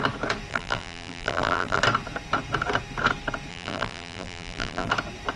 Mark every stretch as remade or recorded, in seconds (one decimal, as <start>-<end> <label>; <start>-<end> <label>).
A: 0.0-0.5 recorded; 0.5-1.8 remade; 1.8-3.5 recorded; 3.5-4.9 remade; 4.9-5.4 recorded